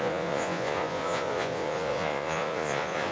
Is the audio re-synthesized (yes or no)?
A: yes